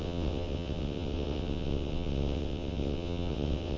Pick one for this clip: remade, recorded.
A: remade